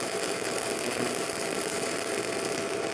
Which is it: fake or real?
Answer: real